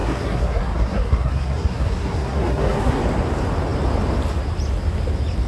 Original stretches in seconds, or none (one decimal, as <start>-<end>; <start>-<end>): 3.0-5.5